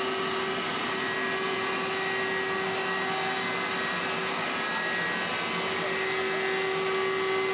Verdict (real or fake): real